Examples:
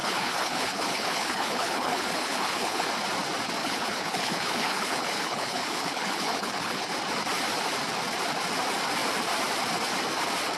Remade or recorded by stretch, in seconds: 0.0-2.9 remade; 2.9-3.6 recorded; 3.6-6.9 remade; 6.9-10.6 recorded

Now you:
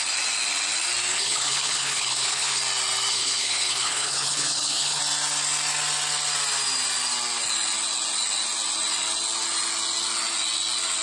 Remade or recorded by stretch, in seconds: 0.0-1.1 recorded; 1.1-2.6 remade; 2.6-3.1 recorded; 3.1-5.0 remade; 5.0-11.0 recorded

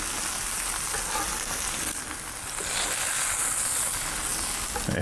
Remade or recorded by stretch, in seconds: 0.0-5.0 recorded

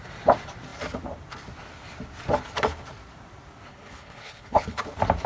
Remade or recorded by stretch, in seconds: 0.0-3.7 recorded; 3.7-4.8 remade; 4.8-5.3 recorded

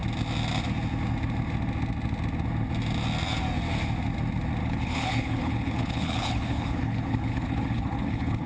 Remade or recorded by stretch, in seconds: 0.0-4.6 recorded; 4.6-8.5 remade

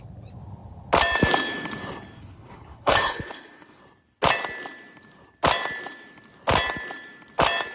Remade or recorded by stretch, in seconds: 0.0-2.2 recorded; 2.2-3.8 remade; 3.8-7.7 recorded